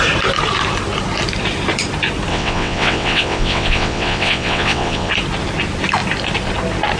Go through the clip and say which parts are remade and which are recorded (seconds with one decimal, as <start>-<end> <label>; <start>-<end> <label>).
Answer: 0.0-2.3 recorded; 2.3-5.1 remade; 5.1-7.0 recorded